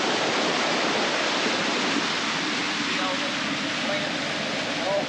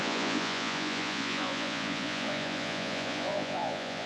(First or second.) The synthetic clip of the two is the second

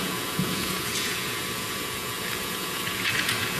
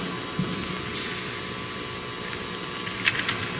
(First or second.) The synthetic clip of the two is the first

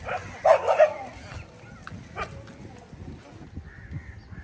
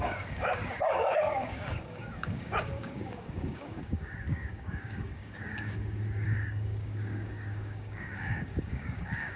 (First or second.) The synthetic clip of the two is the second